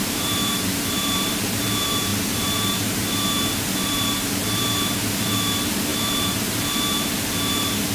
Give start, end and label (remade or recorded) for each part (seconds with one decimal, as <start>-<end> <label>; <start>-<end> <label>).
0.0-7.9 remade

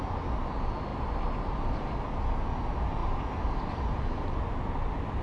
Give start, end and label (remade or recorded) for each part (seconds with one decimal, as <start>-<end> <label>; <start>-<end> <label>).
0.0-0.9 recorded; 0.9-1.9 remade; 1.9-5.2 recorded

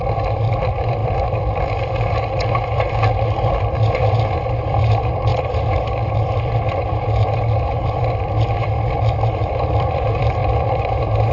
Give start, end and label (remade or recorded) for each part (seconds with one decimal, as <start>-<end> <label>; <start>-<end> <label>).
0.0-11.3 remade